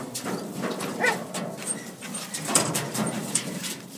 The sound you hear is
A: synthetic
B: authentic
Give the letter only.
A